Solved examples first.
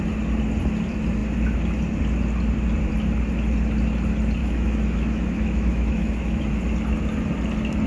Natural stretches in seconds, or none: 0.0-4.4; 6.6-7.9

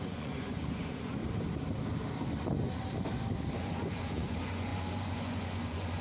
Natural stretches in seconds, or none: 1.2-3.6